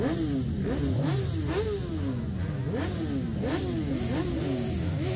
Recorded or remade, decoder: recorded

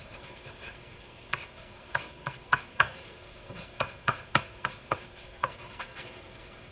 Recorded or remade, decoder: remade, codec, SNAC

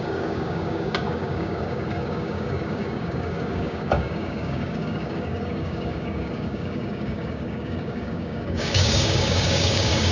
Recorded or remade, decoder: remade, codec, DAC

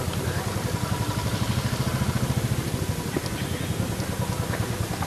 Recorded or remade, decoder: recorded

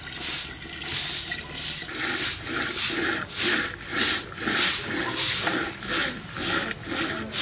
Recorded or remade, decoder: recorded